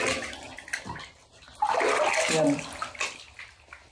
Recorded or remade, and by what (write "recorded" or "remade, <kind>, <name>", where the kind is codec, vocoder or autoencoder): recorded